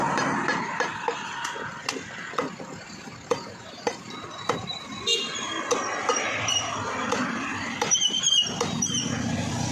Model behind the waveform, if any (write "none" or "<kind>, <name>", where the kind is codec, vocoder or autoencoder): none